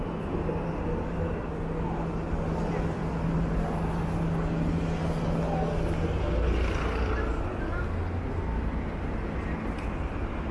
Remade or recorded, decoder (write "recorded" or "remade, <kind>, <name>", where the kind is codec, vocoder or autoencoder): recorded